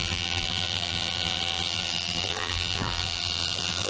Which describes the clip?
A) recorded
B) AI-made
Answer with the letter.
B